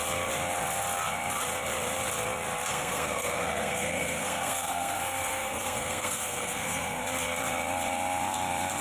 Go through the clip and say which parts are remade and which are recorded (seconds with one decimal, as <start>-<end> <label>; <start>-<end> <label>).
0.0-2.7 recorded; 2.7-7.0 remade; 7.0-8.8 recorded